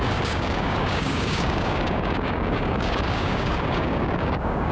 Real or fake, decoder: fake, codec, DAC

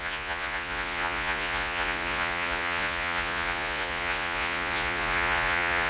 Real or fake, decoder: fake, vocoder, Vocos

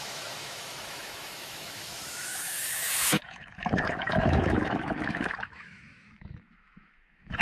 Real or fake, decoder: fake, autoencoder, DAC-VAE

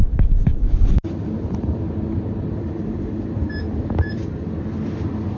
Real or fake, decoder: fake, vocoder, BigVGAN v2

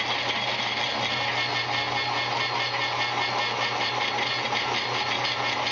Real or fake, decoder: real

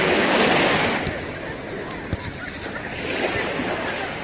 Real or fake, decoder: real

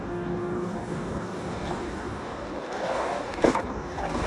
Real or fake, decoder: fake, codec, DAC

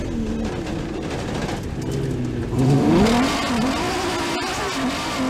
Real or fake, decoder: real